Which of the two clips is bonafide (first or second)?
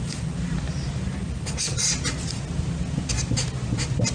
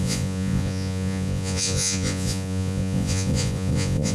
first